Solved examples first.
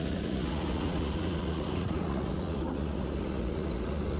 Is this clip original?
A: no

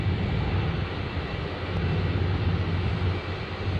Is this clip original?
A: yes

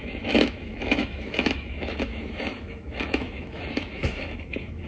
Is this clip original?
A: no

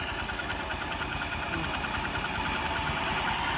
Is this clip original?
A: yes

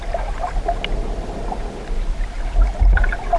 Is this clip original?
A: yes